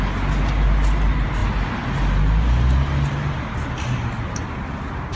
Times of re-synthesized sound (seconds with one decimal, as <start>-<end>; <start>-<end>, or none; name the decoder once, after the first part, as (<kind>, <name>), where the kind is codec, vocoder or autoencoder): none